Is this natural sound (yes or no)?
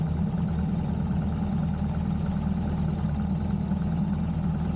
yes